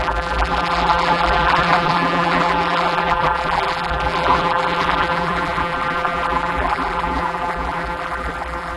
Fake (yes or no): yes